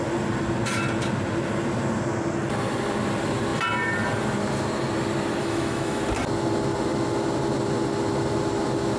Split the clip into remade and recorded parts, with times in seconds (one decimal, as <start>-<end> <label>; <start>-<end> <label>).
0.0-5.4 recorded; 5.4-6.0 remade; 6.0-9.0 recorded